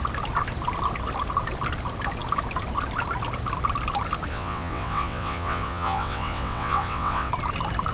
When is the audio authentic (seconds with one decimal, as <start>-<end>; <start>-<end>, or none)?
0.0-4.3; 7.3-7.9